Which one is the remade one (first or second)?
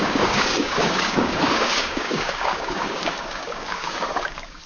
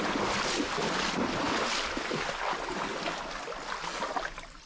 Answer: first